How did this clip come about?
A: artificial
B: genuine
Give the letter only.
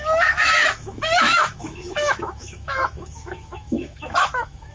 A